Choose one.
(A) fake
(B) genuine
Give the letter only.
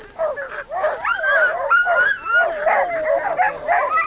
B